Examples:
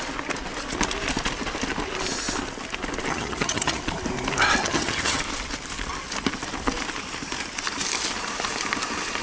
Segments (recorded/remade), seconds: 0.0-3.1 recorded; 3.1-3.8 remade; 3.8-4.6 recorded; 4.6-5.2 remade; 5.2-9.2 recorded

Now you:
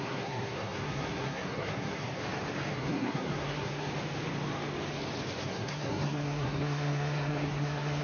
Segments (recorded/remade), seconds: 0.0-2.2 remade; 2.2-2.7 recorded; 2.7-3.9 remade; 3.9-5.4 recorded; 5.4-8.0 remade

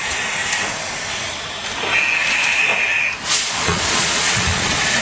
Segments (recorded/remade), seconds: 0.0-0.4 remade; 0.4-2.3 recorded; 2.3-2.7 remade; 2.7-3.3 recorded; 3.3-5.0 remade

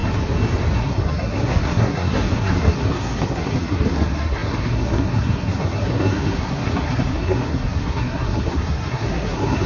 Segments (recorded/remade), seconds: 0.0-0.8 recorded; 0.8-9.7 remade

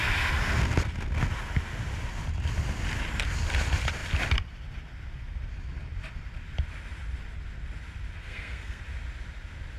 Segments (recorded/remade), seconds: 0.0-8.2 recorded; 8.2-8.8 remade; 8.8-9.8 recorded